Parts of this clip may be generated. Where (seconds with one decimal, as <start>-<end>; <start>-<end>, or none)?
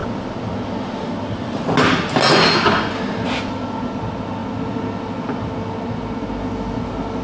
none